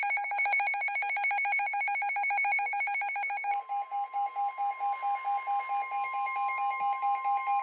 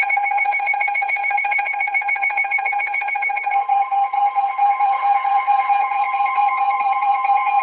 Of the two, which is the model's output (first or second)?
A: second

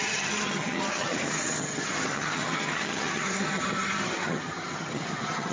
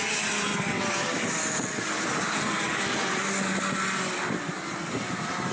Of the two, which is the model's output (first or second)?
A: first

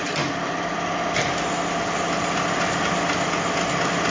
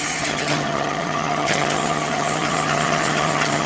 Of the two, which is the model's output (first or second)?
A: second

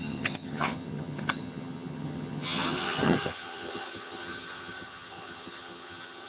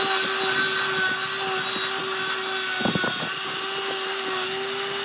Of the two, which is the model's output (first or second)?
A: first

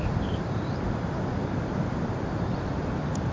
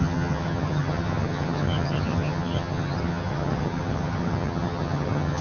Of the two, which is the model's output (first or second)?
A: second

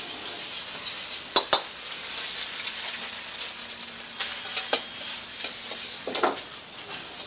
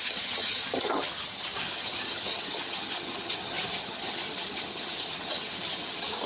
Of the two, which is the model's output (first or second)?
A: second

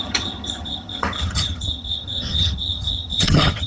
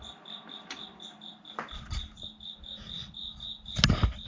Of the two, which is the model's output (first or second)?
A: first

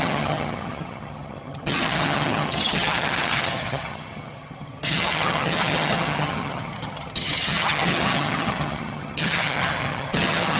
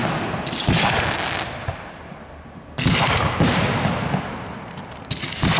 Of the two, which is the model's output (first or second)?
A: first